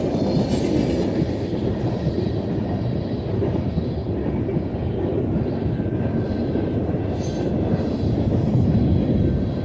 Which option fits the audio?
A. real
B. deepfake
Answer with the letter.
A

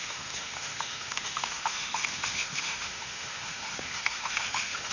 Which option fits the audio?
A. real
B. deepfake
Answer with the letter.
B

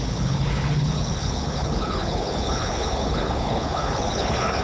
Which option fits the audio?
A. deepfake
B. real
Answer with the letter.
A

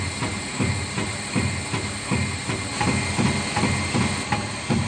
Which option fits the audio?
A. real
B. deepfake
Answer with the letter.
A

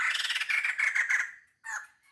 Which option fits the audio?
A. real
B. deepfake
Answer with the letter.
A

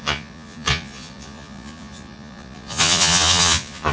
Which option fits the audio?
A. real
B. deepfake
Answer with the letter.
B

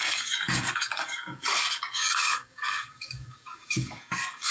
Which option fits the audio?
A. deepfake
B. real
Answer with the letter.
A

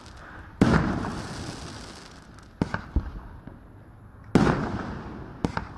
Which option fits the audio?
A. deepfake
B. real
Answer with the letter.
B